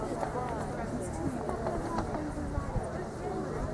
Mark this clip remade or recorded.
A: recorded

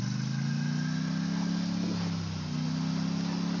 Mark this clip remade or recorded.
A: recorded